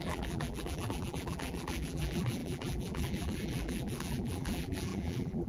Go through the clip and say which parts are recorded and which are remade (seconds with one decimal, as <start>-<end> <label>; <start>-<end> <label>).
0.0-5.5 remade